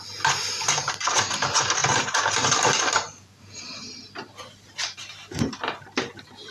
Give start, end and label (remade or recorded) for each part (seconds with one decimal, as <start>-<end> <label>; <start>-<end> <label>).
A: 0.0-1.8 recorded; 1.8-5.5 remade; 5.5-6.5 recorded